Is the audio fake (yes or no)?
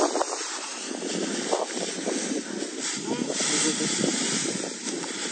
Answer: no